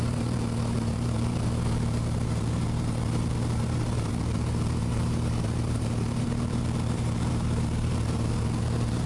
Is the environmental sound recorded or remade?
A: remade